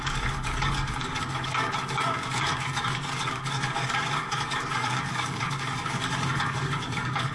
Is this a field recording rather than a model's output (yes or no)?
no